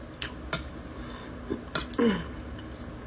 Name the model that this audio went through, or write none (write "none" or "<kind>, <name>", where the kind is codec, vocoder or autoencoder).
none